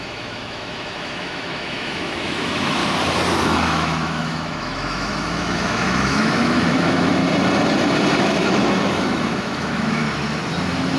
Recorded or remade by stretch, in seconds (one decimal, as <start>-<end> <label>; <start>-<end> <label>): 0.0-2.8 remade; 2.8-3.5 recorded; 3.5-7.2 remade; 7.2-8.2 recorded; 8.2-10.0 remade; 10.0-11.0 recorded